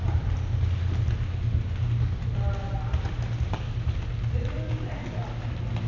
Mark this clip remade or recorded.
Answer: recorded